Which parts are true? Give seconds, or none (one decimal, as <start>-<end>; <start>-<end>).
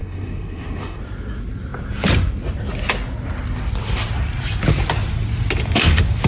1.0-6.3